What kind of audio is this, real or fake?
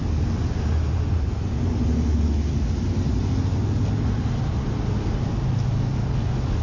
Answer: real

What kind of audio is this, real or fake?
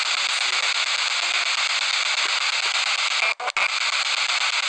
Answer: real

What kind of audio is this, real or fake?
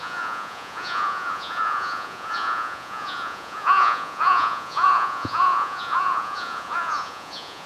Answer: fake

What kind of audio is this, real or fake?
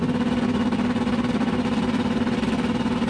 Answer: real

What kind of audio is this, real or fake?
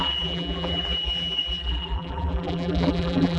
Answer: fake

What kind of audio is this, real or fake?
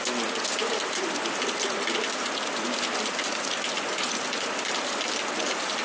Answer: real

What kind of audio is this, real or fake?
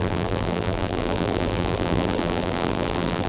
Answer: fake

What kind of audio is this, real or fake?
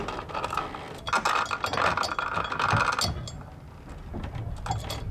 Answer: real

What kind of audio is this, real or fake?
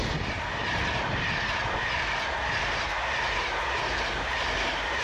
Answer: real